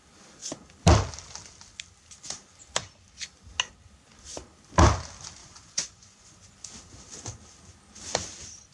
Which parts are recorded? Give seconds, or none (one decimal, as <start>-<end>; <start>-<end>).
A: 0.0-5.4; 6.5-8.7